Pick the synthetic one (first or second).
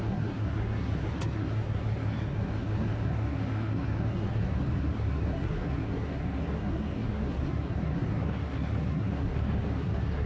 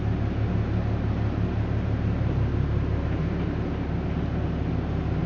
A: first